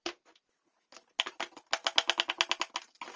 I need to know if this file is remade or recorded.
recorded